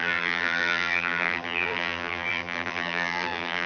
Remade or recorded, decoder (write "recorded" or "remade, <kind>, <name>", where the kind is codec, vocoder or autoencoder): remade, vocoder, BigVGAN v2